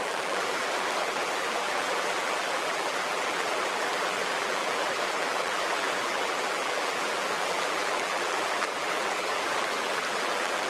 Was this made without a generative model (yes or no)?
no